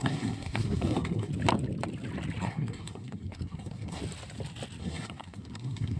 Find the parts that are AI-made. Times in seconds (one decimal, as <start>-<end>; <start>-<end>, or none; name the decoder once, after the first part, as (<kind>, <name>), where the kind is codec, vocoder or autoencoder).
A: 0.0-1.3 (codec, SNAC); 2.4-4.0; 4.8-6.0

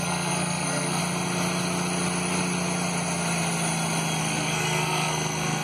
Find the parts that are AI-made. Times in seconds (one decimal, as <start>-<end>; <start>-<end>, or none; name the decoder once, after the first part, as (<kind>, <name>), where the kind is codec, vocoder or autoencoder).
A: 0.0-1.0 (codec, SNAC); 4.2-5.6

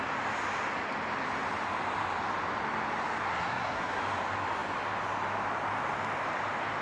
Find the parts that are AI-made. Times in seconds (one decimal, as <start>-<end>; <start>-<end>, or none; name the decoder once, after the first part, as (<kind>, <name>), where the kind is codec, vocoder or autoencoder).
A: 3.2-4.0 (codec, SNAC)

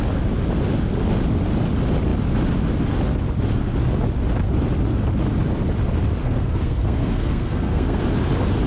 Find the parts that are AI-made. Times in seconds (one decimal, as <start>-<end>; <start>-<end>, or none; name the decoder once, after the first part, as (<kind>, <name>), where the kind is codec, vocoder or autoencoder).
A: 6.2-8.0 (codec, SNAC)

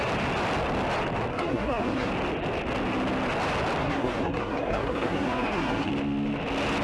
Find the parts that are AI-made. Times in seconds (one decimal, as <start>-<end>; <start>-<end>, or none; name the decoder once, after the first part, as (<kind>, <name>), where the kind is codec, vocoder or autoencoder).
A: 1.3-2.1 (codec, SNAC); 3.8-5.9

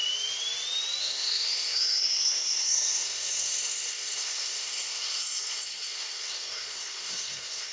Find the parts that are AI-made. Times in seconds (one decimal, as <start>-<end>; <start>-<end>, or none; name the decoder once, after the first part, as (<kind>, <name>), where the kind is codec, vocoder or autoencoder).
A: 1.0-7.7 (codec, SNAC)

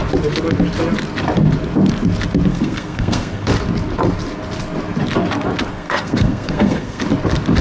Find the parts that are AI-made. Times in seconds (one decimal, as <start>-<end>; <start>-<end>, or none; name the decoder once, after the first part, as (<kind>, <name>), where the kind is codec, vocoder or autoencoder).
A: 2.5-3.5 (codec, SNAC); 5.7-7.0